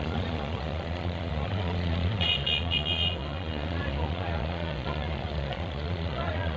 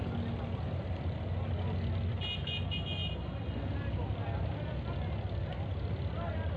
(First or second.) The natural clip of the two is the second